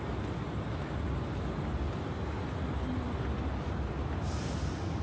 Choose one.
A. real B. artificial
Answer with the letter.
A